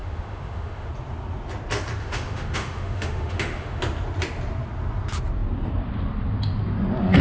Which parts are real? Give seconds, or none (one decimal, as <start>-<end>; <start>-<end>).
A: 0.9-2.0; 3.8-7.2